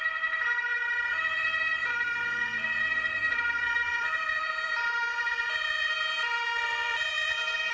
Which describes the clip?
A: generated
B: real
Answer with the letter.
A